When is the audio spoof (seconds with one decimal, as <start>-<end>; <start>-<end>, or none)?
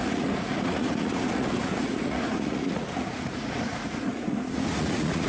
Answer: 0.0-5.3